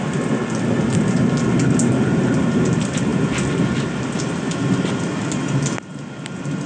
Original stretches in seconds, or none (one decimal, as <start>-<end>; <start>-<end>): 0.0-6.7